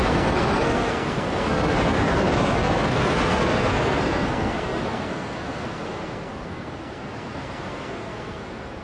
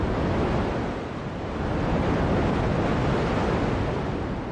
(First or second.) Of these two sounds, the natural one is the second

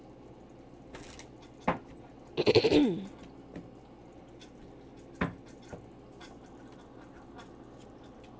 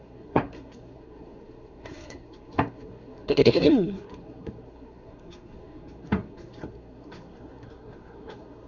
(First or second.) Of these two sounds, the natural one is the first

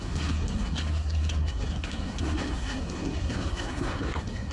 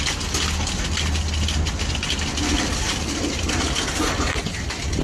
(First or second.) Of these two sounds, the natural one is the second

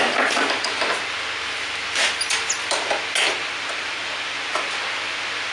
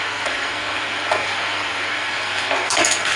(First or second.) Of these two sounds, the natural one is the first